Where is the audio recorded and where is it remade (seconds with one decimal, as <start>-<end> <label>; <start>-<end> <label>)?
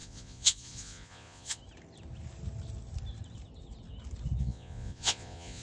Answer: 0.0-1.6 remade; 1.6-4.4 recorded; 4.4-5.6 remade